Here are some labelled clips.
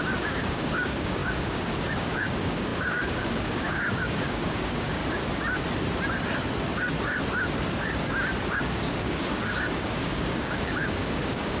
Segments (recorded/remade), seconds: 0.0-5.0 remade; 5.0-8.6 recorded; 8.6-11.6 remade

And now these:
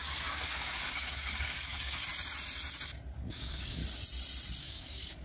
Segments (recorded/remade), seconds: 0.0-2.0 remade; 2.0-3.2 recorded; 3.2-3.8 remade; 3.8-4.6 recorded; 4.6-5.2 remade

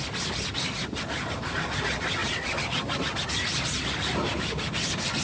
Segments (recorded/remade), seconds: 0.0-5.2 recorded

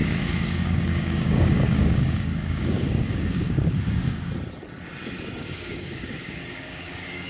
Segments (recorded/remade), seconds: 0.0-4.3 remade; 4.3-5.4 recorded; 5.4-7.3 remade

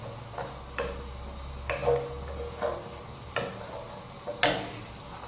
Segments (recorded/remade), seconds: 0.0-5.3 recorded

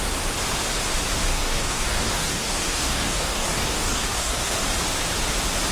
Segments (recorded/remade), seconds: 0.0-1.3 recorded; 1.3-4.6 remade; 4.6-5.7 recorded

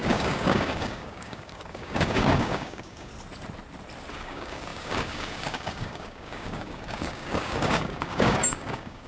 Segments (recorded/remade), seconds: 0.0-3.1 remade; 3.1-4.1 recorded; 4.1-9.1 remade